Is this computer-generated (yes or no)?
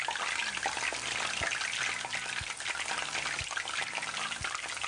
no